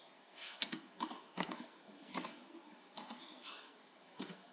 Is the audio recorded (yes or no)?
no